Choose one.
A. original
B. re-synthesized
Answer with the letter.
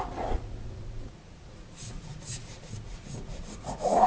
B